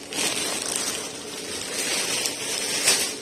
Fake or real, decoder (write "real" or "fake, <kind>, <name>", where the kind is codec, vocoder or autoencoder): real